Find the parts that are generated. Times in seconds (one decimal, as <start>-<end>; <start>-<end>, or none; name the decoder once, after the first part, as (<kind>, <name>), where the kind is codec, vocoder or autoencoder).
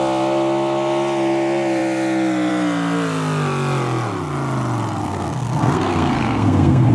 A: 5.0-6.9 (codec, SNAC)